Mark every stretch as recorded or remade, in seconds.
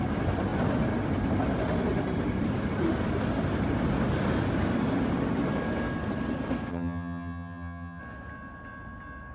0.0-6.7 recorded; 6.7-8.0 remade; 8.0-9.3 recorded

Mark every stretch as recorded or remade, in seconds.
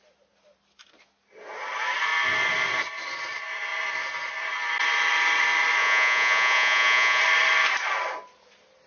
0.0-5.8 recorded; 5.8-7.2 remade; 7.2-8.9 recorded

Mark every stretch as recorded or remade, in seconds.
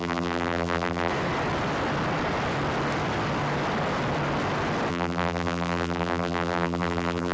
0.0-1.1 remade; 1.1-4.9 recorded; 4.9-7.3 remade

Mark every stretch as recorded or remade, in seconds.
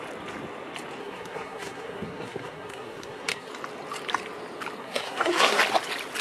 0.0-1.0 recorded; 1.0-3.5 remade; 3.5-4.8 recorded; 4.8-5.6 remade; 5.6-6.2 recorded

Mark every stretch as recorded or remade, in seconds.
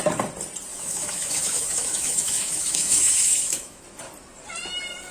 0.0-0.7 recorded; 0.7-3.8 remade; 3.8-5.1 recorded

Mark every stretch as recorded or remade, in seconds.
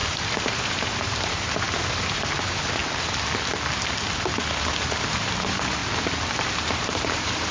0.0-2.8 remade; 2.8-5.1 recorded; 5.1-5.8 remade; 5.8-6.4 recorded; 6.4-7.5 remade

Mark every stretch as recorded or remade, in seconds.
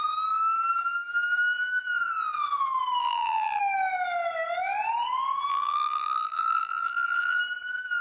0.0-3.0 recorded; 3.0-3.6 remade; 3.6-5.5 recorded; 5.5-7.4 remade; 7.4-8.0 recorded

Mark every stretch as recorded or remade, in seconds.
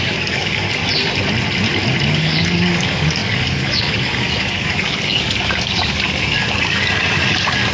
0.0-0.8 remade; 0.8-2.1 recorded; 2.1-7.7 remade